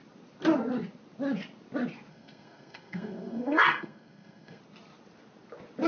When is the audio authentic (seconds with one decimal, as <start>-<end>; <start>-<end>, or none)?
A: 0.0-2.1; 4.6-5.9